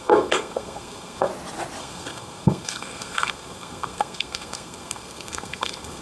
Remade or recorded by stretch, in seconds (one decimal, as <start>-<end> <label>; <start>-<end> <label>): 0.0-1.3 remade; 1.3-1.8 recorded; 1.8-6.0 remade